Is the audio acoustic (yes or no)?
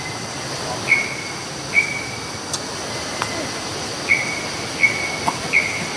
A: yes